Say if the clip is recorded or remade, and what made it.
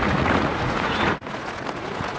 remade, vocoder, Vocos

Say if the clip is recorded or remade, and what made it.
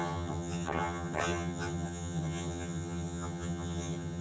remade, vocoder, HiFi-GAN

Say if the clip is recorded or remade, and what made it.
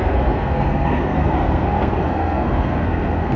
remade, codec, SNAC